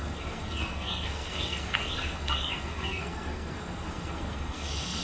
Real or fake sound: fake